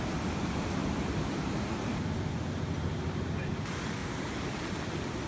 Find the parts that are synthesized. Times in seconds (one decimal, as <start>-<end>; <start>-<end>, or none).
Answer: 0.8-2.1; 4.0-4.6